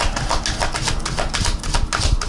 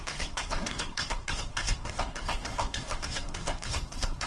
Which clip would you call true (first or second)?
first